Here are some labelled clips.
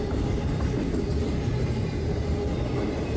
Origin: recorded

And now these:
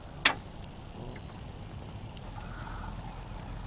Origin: recorded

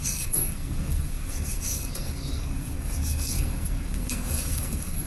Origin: remade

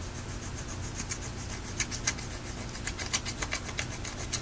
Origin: recorded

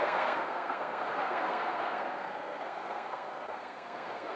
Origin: remade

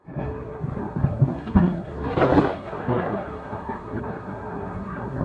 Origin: remade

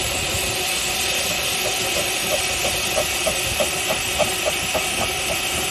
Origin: recorded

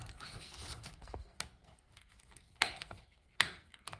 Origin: remade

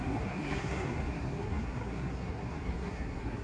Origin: remade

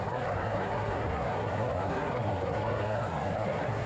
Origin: remade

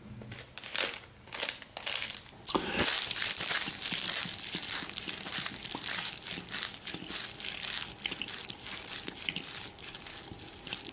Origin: recorded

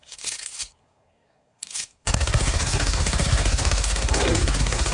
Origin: remade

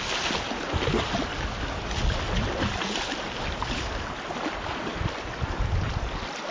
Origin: recorded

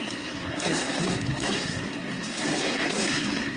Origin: remade